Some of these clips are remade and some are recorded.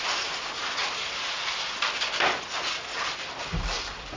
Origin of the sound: recorded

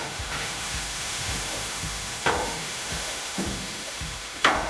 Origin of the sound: remade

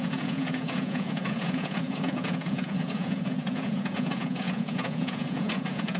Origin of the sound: remade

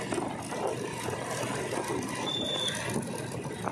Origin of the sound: recorded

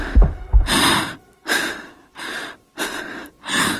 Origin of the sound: remade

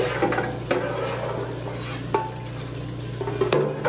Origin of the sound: recorded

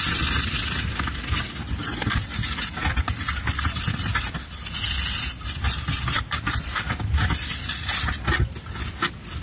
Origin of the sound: recorded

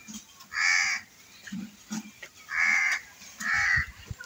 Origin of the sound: recorded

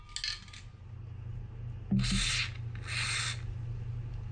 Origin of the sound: recorded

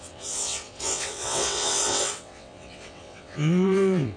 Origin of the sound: remade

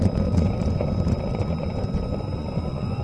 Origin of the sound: remade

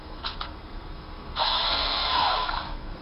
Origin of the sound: remade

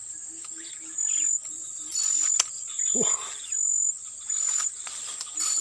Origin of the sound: recorded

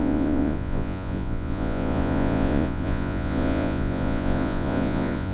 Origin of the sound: remade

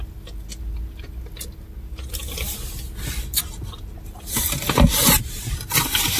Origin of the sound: recorded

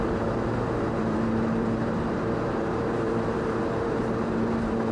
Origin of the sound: remade